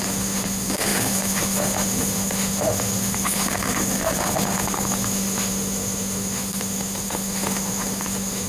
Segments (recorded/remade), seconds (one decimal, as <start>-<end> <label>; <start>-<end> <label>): 0.0-8.5 remade